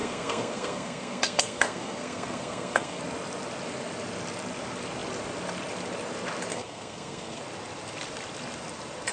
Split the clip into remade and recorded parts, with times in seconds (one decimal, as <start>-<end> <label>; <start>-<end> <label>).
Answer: 0.0-3.0 remade; 3.0-6.5 recorded; 6.5-7.4 remade; 7.4-9.1 recorded